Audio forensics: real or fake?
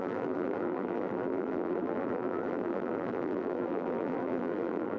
fake